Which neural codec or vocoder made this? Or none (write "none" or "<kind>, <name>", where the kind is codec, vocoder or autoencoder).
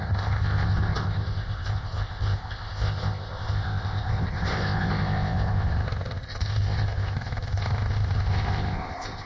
codec, ZipCodec